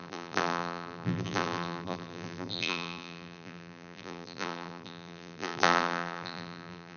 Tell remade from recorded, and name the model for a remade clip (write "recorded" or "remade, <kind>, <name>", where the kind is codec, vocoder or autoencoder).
remade, vocoder, BigVGAN v2